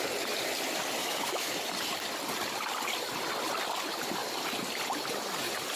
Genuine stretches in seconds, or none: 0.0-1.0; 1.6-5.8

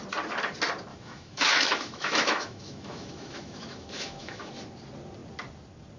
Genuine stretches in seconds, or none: 0.0-0.9; 4.5-6.0

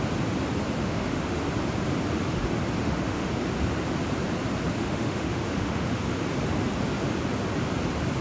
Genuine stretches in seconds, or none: 0.0-0.8; 1.4-2.8; 3.3-4.8; 6.2-8.2

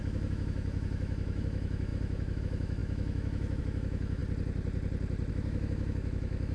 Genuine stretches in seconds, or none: 4.2-5.3

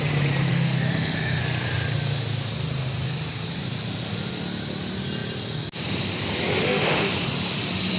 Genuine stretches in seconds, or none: 0.0-0.5; 1.4-6.6; 7.1-8.0

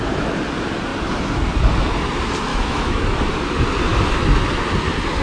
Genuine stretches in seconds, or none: 0.0-2.5; 3.3-5.2